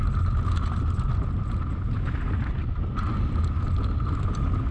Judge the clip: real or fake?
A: real